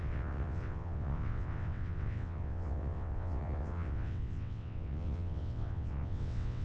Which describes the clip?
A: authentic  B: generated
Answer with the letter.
B